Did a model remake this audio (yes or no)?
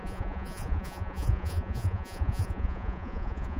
yes